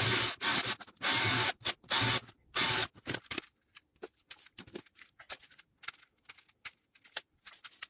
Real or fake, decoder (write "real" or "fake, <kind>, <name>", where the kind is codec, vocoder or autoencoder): real